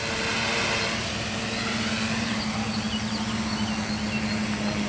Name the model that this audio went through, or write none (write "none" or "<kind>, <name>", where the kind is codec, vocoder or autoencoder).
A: none